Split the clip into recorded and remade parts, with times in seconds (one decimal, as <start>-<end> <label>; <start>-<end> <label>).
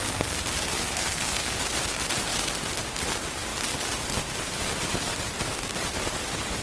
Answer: 0.0-0.7 recorded; 0.7-1.6 remade; 1.6-6.6 recorded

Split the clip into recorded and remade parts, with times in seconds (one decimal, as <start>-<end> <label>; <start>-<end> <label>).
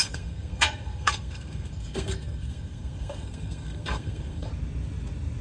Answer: 0.0-4.5 remade; 4.5-5.4 recorded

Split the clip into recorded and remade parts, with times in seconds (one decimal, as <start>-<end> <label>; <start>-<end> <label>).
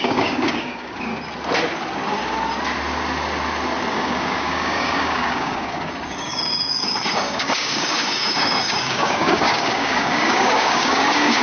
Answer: 0.0-1.1 remade; 1.1-3.9 recorded; 3.9-11.4 remade